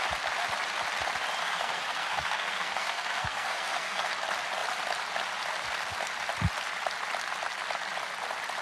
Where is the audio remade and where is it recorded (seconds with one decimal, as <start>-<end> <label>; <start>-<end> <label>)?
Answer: 0.0-1.4 recorded; 1.4-4.1 remade; 4.1-8.6 recorded